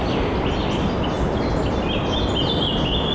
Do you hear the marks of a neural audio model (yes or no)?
no